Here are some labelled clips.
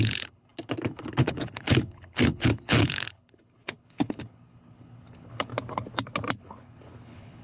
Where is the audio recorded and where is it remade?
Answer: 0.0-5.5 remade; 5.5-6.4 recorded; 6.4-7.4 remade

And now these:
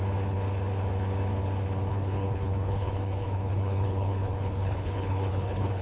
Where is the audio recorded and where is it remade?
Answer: 0.0-1.9 recorded; 1.9-5.8 remade